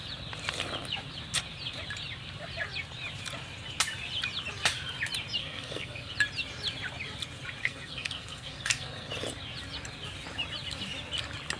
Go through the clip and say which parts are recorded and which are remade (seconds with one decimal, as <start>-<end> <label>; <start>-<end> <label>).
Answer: 0.0-5.4 recorded; 5.4-6.1 remade; 6.1-7.6 recorded; 7.6-9.1 remade; 9.1-11.6 recorded